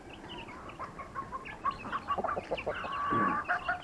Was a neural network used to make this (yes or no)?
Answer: no